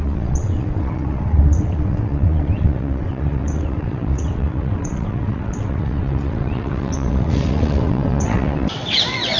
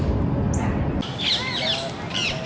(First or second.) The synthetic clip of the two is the first